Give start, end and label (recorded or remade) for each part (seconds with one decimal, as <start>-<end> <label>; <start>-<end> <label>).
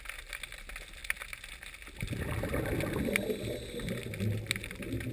0.0-5.1 recorded